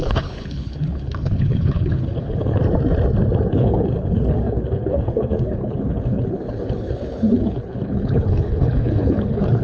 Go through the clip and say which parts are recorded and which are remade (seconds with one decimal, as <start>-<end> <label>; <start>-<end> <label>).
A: 0.0-2.6 remade; 2.6-3.5 recorded; 3.5-9.6 remade